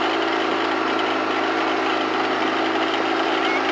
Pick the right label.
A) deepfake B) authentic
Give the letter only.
B